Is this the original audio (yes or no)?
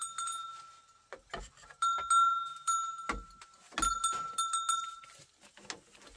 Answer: yes